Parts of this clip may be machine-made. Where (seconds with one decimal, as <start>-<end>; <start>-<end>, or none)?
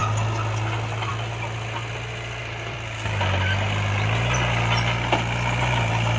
2.4-6.2